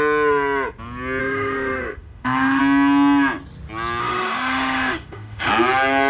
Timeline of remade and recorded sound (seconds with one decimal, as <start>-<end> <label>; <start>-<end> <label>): 0.0-1.2 recorded; 1.2-2.6 remade; 2.6-4.0 recorded; 4.0-5.5 remade; 5.5-6.1 recorded